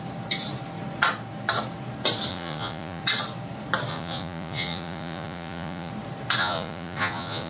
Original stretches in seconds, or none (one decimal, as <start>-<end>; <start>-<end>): 0.0-2.3; 3.0-3.9; 5.9-6.4